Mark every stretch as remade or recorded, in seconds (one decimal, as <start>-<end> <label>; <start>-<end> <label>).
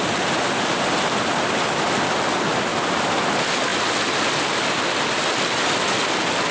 0.0-6.5 recorded